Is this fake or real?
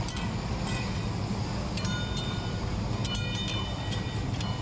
real